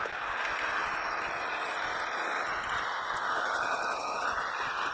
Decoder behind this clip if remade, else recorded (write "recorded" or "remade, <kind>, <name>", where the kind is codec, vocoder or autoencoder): recorded